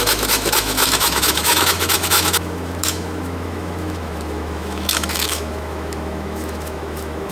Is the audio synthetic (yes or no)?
yes